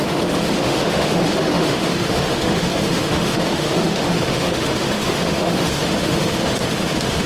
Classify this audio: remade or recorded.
remade